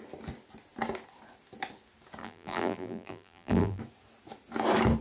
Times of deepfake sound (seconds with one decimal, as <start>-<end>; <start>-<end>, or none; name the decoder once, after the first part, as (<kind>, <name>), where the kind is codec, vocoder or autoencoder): 2.2-3.8 (vocoder, BigVGAN v2)